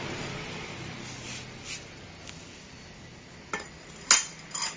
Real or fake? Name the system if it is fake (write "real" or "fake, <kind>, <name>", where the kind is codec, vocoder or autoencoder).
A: real